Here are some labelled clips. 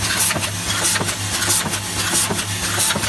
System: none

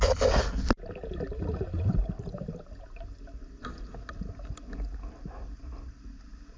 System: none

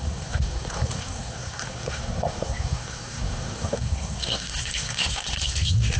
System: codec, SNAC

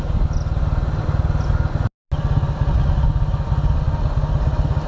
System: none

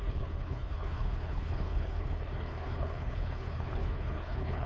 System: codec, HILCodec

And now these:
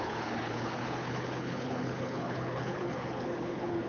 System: codec, HILCodec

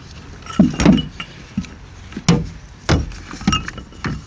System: none